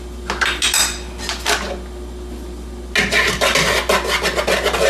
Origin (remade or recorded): recorded